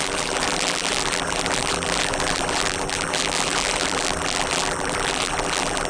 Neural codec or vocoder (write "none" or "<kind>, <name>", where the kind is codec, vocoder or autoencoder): vocoder, BigVGAN v2